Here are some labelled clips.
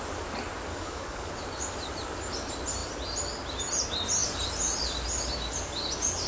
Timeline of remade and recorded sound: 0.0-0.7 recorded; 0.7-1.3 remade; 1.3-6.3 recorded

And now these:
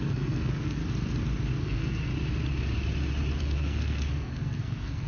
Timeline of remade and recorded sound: 0.0-0.8 remade; 0.8-1.6 recorded; 1.6-2.1 remade; 2.1-3.4 recorded; 3.4-5.1 remade

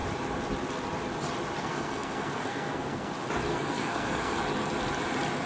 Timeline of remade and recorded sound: 0.0-1.6 recorded; 1.6-3.1 remade; 3.1-3.5 recorded; 3.5-4.4 remade; 4.4-5.5 recorded